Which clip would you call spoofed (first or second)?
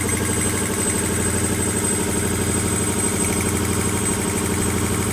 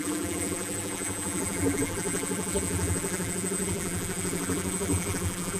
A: second